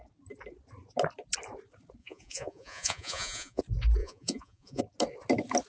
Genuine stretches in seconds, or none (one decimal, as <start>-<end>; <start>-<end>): 0.0-2.0; 3.6-4.0; 4.8-5.7